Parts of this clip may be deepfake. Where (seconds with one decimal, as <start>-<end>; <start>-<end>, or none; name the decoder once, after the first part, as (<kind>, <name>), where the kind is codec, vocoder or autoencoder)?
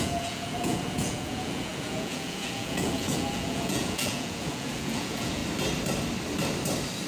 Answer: 0.0-5.4 (vocoder, Vocos)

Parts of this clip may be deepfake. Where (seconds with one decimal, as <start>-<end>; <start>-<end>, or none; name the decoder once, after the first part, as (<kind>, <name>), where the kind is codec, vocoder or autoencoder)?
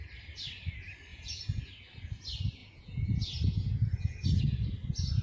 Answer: 1.1-1.6 (vocoder, Vocos); 2.6-4.4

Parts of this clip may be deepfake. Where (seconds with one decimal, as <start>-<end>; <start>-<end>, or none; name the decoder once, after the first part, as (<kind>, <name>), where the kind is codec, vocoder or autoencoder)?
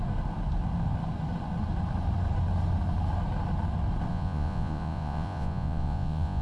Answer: 4.1-6.4 (vocoder, Vocos)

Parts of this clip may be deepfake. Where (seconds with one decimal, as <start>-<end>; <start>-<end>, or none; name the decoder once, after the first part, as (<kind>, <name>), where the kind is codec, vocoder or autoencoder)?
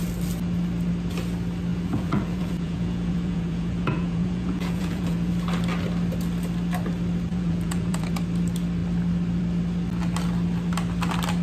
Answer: 1.7-5.3 (vocoder, Vocos); 7.3-8.1